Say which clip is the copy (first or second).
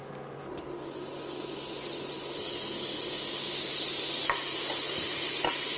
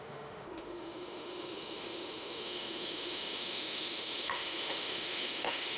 second